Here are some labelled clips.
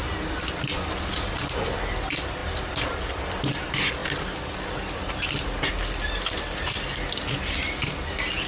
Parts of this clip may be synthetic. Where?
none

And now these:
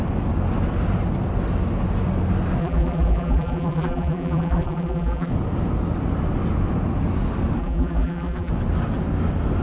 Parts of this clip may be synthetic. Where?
2.6-5.3 (vocoder, BigVGAN v2); 7.6-8.5

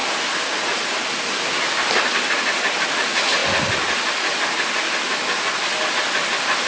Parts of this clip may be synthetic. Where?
none

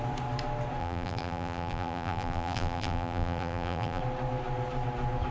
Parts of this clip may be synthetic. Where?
0.8-4.0 (vocoder, BigVGAN v2)

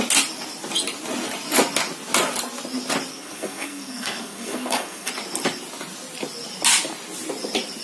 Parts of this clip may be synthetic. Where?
3.1-5.1 (codec, SNAC)

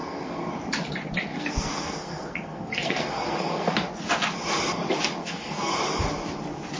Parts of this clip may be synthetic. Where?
0.0-0.5 (codec, SNAC); 1.3-3.7; 5.2-5.7